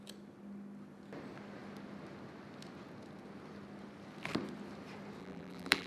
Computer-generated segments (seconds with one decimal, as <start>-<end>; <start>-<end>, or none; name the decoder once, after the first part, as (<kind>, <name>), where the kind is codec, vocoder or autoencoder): 5.2-5.9 (vocoder, BigVGAN v2)